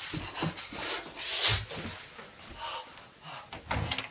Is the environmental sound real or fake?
real